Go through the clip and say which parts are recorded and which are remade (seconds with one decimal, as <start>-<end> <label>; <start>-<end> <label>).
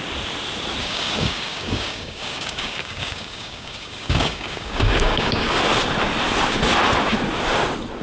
0.0-0.8 recorded; 0.8-5.6 remade; 5.6-8.0 recorded